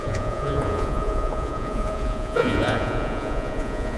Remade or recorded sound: remade